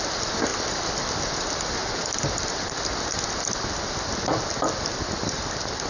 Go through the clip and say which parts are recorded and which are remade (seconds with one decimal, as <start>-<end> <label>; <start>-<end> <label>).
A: 0.0-5.9 recorded